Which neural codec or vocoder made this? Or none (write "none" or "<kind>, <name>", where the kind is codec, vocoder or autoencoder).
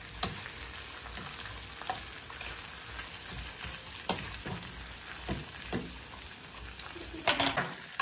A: none